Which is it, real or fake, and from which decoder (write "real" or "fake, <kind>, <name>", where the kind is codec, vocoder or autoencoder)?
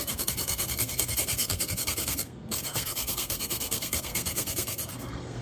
fake, codec, SNAC